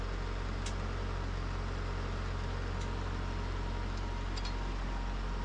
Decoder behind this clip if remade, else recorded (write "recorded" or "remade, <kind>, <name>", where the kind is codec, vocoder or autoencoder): recorded